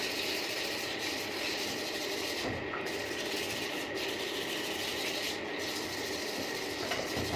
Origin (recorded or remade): recorded